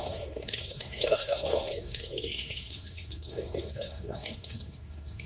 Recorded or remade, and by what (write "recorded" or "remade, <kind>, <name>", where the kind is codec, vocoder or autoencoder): remade, codec, SNAC